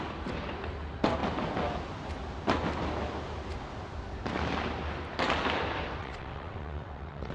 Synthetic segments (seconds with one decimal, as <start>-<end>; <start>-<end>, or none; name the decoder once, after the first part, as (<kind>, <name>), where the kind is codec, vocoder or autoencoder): 6.0-7.3 (vocoder, WaveNeXt)